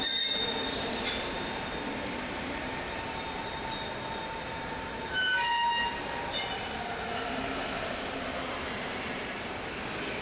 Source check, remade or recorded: recorded